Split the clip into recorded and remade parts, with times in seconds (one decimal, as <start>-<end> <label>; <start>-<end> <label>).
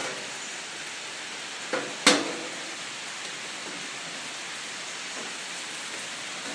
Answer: 0.0-1.2 remade; 1.2-5.2 recorded; 5.2-5.9 remade; 5.9-6.5 recorded